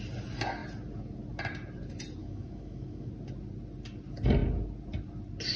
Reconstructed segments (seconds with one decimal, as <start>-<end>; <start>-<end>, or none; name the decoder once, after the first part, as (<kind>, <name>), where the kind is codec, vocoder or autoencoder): 2.2-3.1 (autoencoder, DAC-VAE)